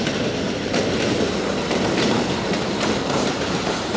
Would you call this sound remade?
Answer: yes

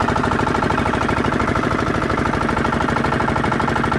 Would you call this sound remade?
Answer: yes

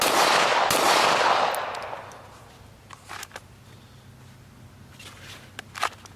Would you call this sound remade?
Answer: no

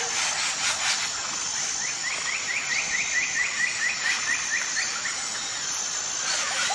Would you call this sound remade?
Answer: no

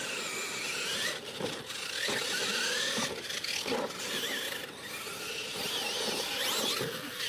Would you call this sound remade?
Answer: no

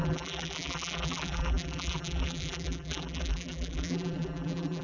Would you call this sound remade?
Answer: yes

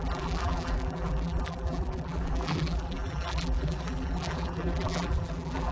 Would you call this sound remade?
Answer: yes